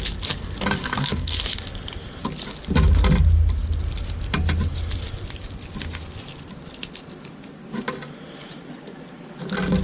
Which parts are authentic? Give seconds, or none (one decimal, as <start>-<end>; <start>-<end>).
0.0-0.8; 1.4-9.8